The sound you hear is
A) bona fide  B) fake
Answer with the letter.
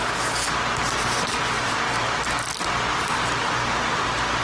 A